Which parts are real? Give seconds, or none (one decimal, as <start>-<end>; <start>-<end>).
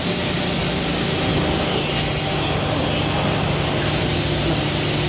0.0-5.1